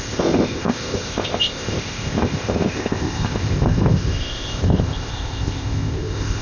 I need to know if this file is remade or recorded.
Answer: remade